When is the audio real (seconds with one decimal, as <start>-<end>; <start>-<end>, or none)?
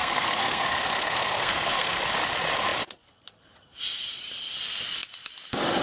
2.0-5.8